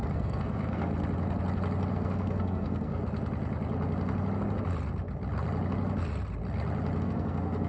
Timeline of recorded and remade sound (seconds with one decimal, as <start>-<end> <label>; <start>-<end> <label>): 0.0-0.9 remade; 0.9-1.9 recorded; 1.9-3.0 remade; 3.0-7.0 recorded; 7.0-7.7 remade